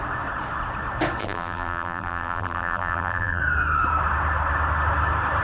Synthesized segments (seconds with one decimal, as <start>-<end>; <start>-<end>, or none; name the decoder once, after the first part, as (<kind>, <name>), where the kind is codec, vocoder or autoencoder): 1.2-3.4 (vocoder, BigVGAN v2)